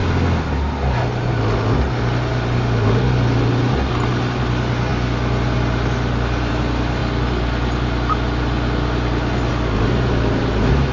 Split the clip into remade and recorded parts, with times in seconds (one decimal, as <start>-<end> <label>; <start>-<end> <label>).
0.0-10.9 recorded